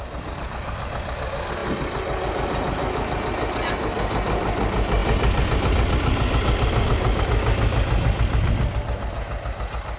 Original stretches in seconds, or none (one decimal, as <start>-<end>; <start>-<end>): 0.0-10.0